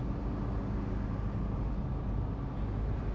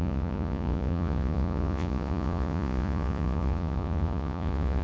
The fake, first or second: second